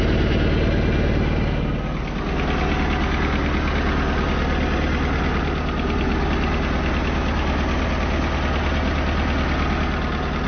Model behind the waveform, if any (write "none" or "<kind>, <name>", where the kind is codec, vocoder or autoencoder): none